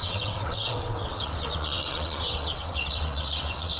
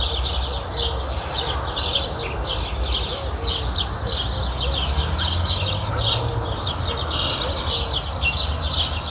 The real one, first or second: second